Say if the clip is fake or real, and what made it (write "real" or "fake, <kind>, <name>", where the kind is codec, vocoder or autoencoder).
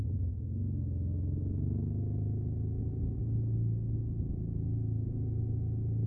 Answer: real